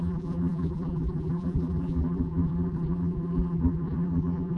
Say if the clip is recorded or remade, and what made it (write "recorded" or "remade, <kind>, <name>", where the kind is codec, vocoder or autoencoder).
remade, vocoder, BigVGAN v2